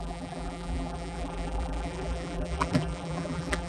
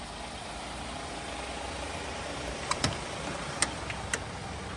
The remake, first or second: first